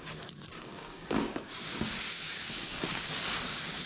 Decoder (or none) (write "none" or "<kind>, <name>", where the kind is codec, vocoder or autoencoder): codec, DAC